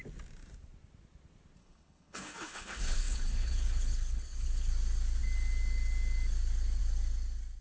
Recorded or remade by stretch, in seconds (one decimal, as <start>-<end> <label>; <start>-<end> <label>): 0.0-1.6 recorded; 1.6-4.7 remade; 4.7-7.6 recorded